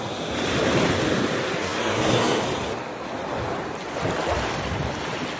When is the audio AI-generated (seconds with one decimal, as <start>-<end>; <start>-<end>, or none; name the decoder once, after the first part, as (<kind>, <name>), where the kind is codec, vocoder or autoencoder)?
1.6-2.4 (codec, SNAC)